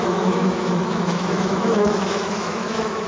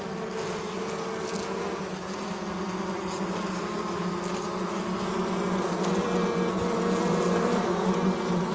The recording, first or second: second